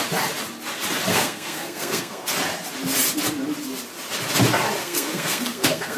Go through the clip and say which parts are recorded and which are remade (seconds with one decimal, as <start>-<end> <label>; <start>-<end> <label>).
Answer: 0.0-1.1 recorded; 1.1-2.3 remade; 2.3-4.8 recorded; 4.8-6.0 remade